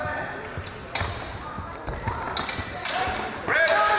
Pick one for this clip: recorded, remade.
recorded